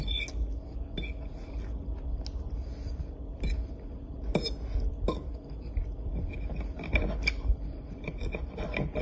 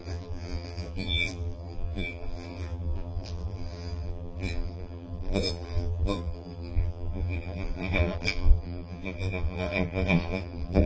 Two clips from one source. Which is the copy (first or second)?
second